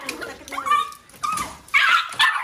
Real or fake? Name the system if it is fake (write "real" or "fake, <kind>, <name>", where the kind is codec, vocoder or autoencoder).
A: real